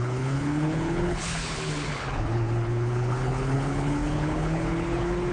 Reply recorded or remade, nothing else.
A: remade